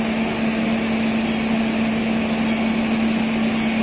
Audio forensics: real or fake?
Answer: real